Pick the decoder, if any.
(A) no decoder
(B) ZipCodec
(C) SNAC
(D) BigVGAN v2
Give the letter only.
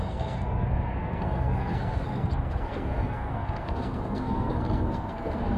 C